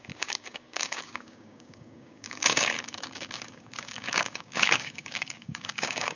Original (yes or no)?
no